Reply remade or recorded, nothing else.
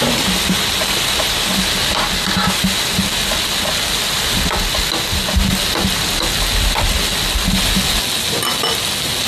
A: recorded